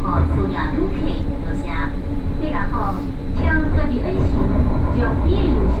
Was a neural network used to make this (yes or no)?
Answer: no